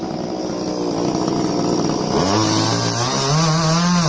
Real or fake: real